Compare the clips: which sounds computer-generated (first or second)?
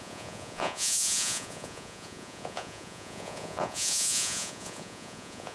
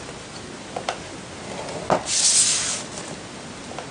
first